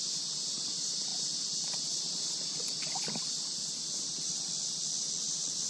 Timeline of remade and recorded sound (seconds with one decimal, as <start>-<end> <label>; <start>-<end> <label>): 0.0-1.1 recorded; 1.1-4.5 remade; 4.5-5.7 recorded